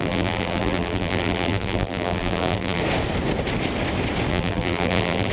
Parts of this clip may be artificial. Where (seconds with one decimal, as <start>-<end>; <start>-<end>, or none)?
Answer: 0.0-2.8; 4.3-5.3